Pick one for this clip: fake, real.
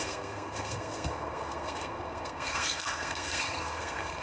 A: fake